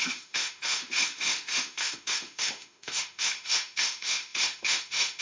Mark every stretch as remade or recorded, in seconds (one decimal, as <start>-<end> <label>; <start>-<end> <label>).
0.0-5.2 remade

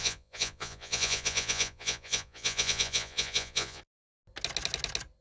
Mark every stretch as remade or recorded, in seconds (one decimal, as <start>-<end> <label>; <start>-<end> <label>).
0.0-3.8 remade; 3.8-5.2 recorded

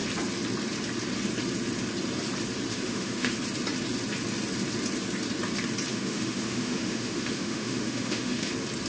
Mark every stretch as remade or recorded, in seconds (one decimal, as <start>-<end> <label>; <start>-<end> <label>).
0.0-2.7 recorded; 2.7-3.3 remade; 3.3-5.9 recorded; 5.9-8.5 remade; 8.5-8.9 recorded

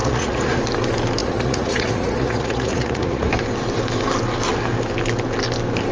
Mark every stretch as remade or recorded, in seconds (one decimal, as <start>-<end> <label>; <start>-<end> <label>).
0.0-0.6 remade; 0.6-1.2 recorded; 1.2-3.3 remade; 3.3-5.9 recorded